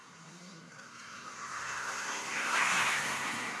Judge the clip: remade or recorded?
remade